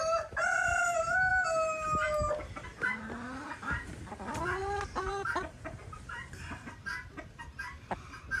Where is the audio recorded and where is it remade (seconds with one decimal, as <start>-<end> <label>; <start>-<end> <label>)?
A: 0.0-1.3 recorded; 1.3-2.3 remade; 2.3-4.6 recorded; 4.6-6.7 remade; 6.7-8.4 recorded